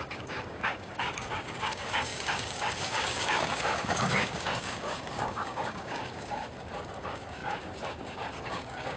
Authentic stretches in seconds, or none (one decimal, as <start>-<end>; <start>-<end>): 6.4-7.0